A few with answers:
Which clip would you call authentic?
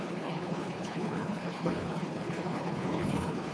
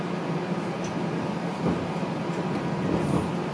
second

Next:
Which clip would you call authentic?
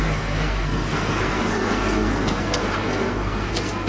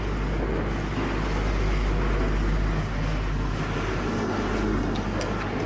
second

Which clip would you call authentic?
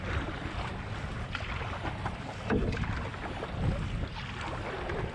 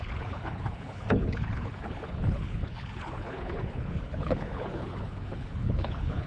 first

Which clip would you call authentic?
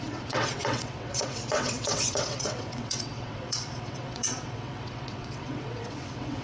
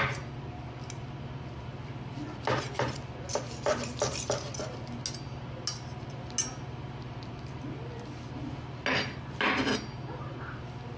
second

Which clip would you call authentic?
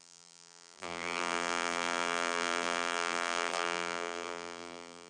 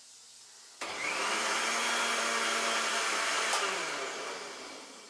second